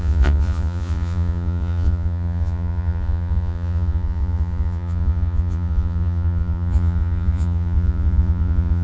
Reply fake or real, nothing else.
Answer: fake